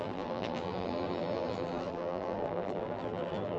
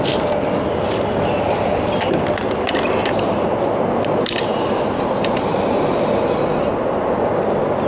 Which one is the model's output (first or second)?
first